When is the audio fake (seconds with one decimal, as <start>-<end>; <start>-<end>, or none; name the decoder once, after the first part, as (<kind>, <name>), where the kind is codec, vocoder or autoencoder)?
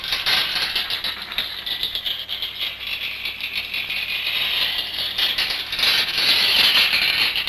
none